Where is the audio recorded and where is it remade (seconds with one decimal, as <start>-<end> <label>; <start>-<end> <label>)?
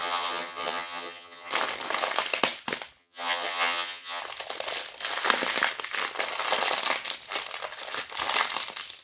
0.0-1.5 remade; 1.5-3.0 recorded; 3.0-4.2 remade; 4.2-9.0 recorded